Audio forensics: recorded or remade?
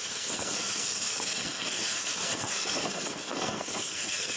remade